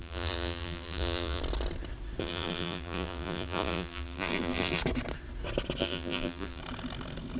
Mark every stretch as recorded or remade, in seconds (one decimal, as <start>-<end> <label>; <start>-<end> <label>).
0.0-1.4 remade; 1.4-2.2 recorded; 2.2-4.8 remade; 4.8-5.8 recorded; 5.8-6.6 remade; 6.6-7.4 recorded